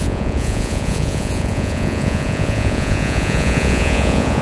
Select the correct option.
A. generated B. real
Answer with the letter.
A